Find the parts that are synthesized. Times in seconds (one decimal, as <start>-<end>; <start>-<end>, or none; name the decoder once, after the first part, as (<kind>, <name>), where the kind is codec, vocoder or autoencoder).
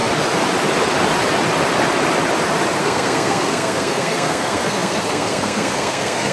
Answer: 2.8-6.3 (codec, SNAC)